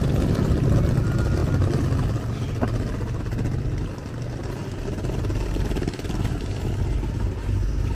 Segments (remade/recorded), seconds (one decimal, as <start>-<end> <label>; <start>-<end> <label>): 0.0-7.9 recorded